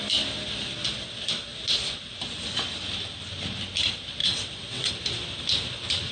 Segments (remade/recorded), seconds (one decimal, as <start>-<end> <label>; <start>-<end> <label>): 0.0-4.2 recorded; 4.2-4.9 remade; 4.9-6.1 recorded